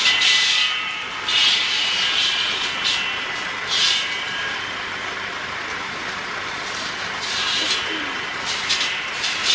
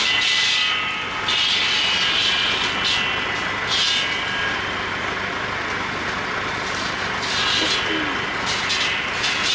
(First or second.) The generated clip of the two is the first